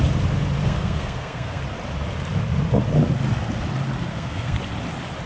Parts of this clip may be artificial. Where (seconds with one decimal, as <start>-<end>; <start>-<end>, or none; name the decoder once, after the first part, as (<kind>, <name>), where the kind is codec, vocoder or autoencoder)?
0.6-1.6 (codec, SNAC); 4.1-4.6